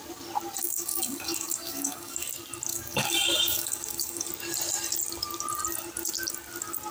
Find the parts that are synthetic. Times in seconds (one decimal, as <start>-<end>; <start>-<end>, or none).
0.6-2.3; 2.7-4.3